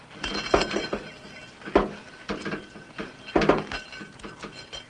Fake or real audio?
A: real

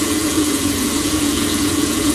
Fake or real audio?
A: fake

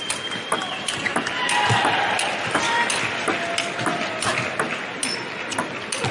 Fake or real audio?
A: real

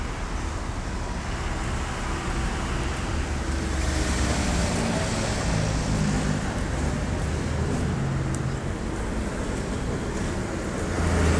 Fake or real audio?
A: real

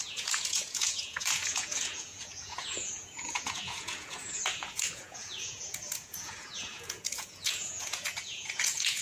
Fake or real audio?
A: fake